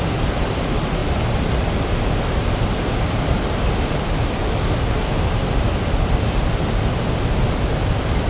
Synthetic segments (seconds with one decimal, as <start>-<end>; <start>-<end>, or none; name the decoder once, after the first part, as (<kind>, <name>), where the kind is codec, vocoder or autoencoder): none